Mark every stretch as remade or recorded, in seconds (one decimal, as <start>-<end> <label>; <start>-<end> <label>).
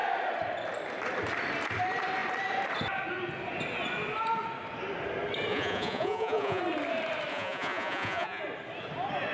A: 0.0-5.5 recorded; 5.5-6.6 remade; 6.6-7.3 recorded; 7.3-8.4 remade; 8.4-9.3 recorded